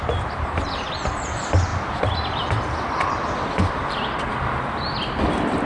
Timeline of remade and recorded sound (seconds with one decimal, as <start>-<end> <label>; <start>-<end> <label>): 0.0-5.7 recorded